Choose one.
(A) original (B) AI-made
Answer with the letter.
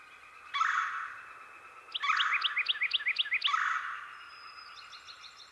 A